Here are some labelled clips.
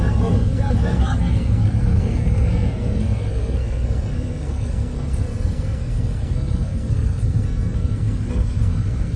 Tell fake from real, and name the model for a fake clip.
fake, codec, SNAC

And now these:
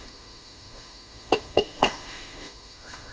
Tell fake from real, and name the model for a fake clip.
fake, autoencoder, DAC-VAE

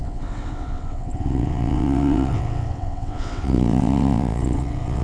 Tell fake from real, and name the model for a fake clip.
fake, vocoder, WaveNeXt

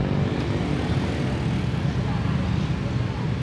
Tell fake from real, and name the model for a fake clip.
real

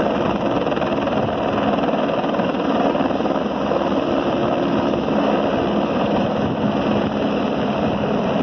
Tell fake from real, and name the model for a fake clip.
real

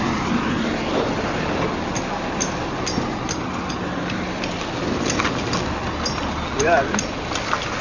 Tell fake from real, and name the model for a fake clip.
real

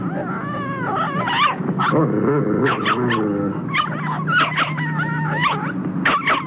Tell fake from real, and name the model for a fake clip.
real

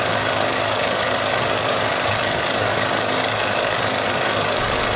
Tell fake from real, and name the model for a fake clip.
fake, codec, DAC